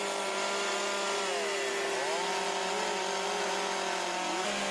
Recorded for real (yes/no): yes